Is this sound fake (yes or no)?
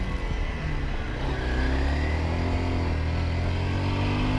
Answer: no